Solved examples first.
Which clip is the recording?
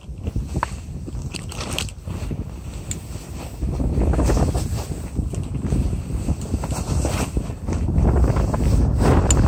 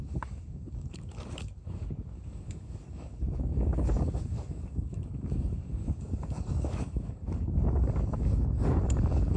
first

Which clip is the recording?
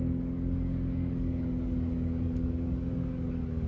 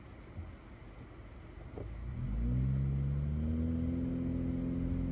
second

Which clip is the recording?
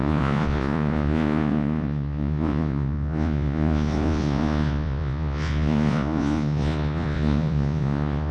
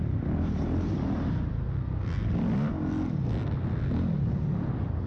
second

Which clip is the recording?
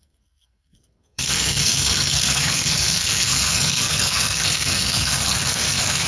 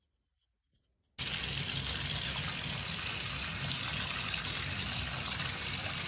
second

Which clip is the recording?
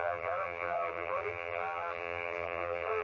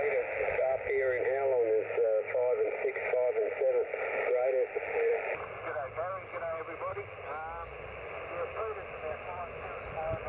second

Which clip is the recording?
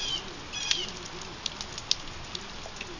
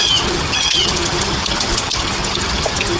first